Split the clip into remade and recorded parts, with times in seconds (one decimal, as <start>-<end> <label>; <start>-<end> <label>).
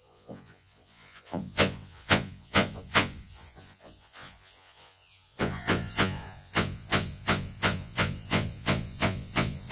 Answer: 0.0-9.7 remade